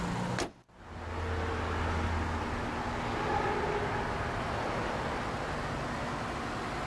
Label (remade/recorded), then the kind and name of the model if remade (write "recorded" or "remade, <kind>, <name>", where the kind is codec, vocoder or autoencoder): recorded